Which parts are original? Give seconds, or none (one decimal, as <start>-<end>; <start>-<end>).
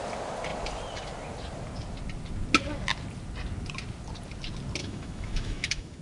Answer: 0.0-4.8